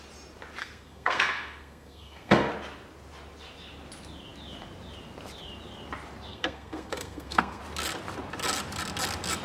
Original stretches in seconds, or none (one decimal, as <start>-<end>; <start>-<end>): 0.0-0.6; 2.5-6.3; 7.6-9.4